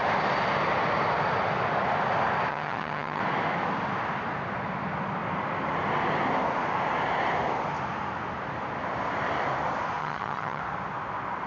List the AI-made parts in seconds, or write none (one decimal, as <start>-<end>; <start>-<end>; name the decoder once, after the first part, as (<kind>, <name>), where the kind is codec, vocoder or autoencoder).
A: 2.5-3.2 (vocoder, HiFi-GAN); 10.0-10.6